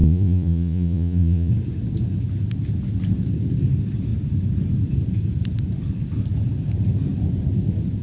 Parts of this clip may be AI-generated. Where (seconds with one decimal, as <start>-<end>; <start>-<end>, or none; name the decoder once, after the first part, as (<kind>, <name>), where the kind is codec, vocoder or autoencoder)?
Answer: 0.0-1.5 (vocoder, Vocos)